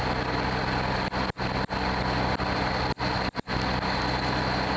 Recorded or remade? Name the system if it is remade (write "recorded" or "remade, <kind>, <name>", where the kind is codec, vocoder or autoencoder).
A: recorded